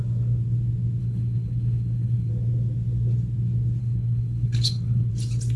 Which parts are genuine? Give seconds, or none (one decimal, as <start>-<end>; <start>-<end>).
0.0-1.0; 2.3-3.8; 5.1-5.6